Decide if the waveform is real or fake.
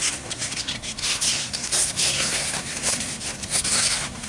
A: fake